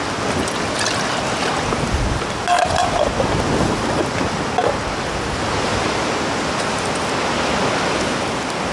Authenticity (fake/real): real